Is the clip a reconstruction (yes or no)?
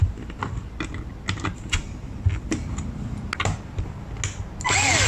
no